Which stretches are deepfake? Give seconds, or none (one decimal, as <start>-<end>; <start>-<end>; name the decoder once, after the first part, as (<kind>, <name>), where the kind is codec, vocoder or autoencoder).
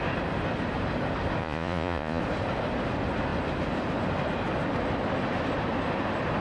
1.4-2.2 (vocoder, Vocos)